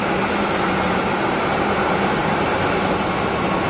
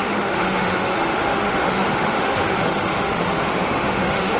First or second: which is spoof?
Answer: second